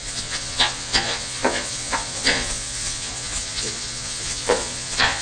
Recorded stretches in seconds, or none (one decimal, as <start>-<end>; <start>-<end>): none